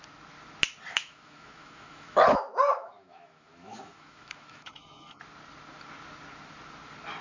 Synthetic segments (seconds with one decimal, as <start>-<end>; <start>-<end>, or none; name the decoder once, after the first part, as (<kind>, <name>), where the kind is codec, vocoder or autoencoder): 0.9-5.2 (autoencoder, DAC-VAE)